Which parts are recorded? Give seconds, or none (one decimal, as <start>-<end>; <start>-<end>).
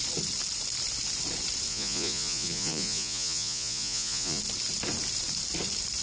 0.0-1.7; 4.4-6.0